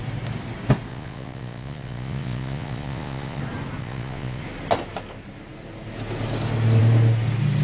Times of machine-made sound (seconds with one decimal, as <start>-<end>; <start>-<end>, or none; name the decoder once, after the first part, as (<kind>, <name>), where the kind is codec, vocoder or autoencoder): 0.9-3.4 (vocoder, Vocos); 3.8-4.4